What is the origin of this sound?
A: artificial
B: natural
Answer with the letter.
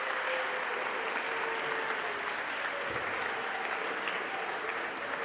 B